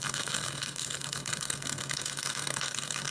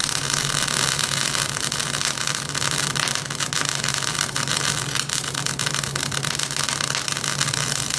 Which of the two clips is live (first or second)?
second